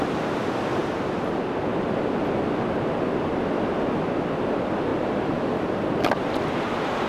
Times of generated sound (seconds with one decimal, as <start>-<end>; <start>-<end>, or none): 4.9-5.5